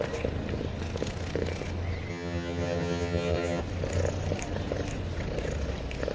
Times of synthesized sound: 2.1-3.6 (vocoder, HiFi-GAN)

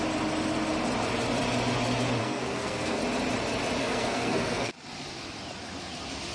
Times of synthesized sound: 2.2-3.0 (codec, SNAC); 3.8-4.7

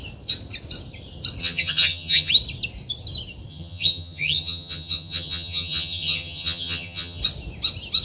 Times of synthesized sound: 1.4-2.3 (vocoder, HiFi-GAN); 3.5-7.2

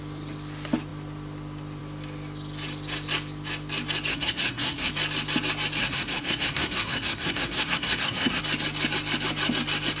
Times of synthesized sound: 4.1-4.9 (codec, SNAC); 5.8-8.4

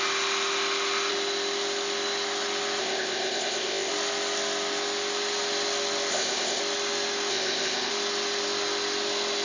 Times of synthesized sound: 2.8-3.9 (codec, ZipCodec); 6.1-6.6; 7.3-7.9

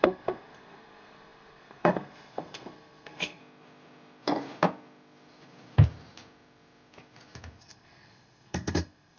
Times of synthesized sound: 0.0-3.4 (codec, SNAC); 7.6-9.2